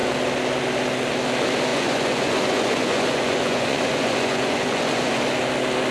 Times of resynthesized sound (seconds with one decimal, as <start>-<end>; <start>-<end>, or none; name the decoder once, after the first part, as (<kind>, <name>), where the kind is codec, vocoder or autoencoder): 1.7-5.2 (vocoder, Vocos)